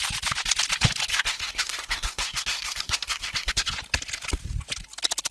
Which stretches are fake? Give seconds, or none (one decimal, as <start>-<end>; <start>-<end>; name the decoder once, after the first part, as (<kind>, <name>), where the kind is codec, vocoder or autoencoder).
1.1-3.7 (codec, SNAC)